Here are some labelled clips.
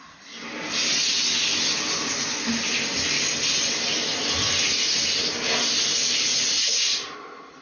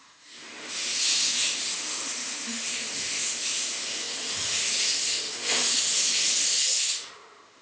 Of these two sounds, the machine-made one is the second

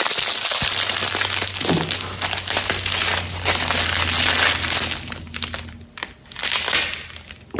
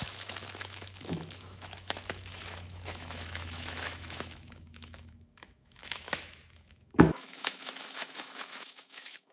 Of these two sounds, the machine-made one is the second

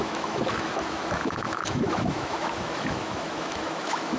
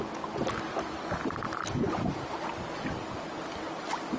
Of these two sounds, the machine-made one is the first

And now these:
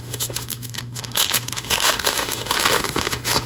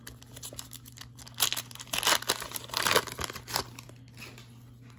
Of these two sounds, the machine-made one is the first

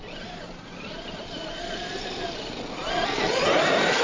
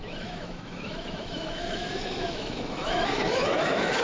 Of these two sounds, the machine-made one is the second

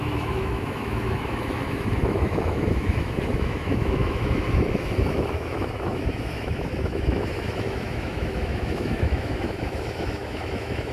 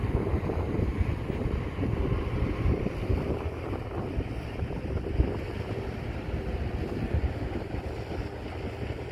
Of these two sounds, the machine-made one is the first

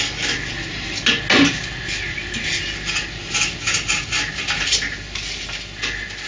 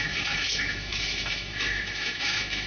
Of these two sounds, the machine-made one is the second